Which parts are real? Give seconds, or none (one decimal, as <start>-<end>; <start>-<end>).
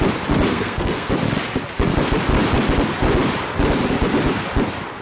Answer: 0.0-0.5; 1.1-5.0